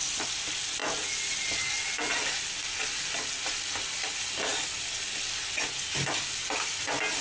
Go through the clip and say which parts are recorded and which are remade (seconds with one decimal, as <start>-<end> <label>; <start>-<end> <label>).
0.0-7.2 recorded